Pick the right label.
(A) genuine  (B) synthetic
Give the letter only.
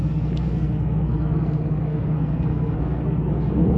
B